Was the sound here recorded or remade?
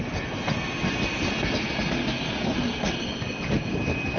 recorded